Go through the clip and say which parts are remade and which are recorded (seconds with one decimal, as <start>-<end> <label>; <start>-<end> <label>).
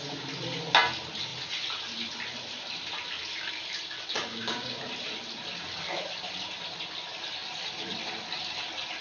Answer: 0.0-4.3 recorded; 4.3-4.8 remade; 4.8-9.0 recorded